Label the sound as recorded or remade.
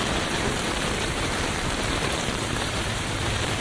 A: remade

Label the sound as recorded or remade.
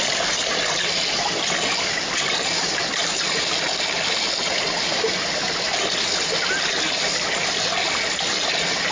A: recorded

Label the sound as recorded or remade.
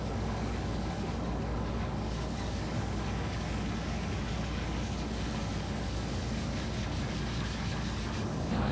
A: remade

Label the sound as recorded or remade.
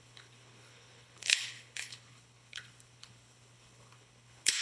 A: remade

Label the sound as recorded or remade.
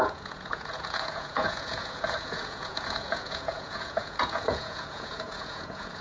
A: remade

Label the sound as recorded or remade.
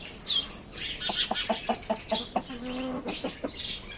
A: recorded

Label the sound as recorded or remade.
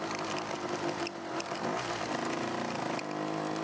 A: recorded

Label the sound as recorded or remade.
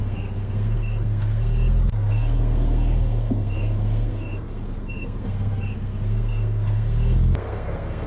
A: remade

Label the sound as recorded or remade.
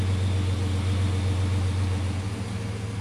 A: recorded